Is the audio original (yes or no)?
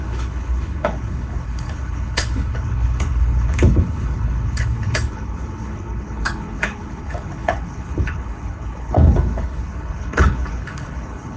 no